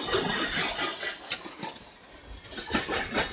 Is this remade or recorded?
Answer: recorded